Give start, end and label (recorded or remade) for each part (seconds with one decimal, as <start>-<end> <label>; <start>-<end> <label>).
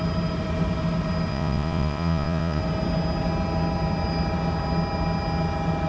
0.0-1.3 recorded; 1.3-2.6 remade; 2.6-5.9 recorded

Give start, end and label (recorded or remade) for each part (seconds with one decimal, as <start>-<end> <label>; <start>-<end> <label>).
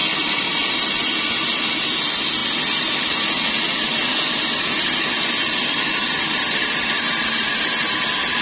0.0-8.4 recorded